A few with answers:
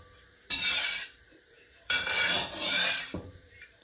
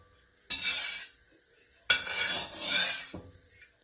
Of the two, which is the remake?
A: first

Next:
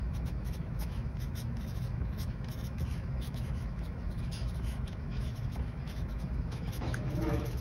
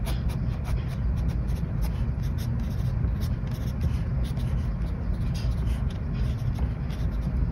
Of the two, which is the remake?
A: first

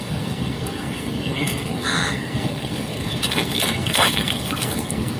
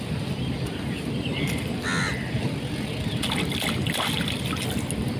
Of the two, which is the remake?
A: first